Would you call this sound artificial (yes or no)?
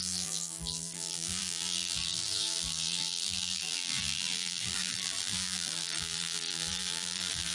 yes